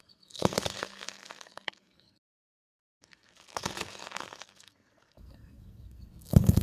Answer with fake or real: fake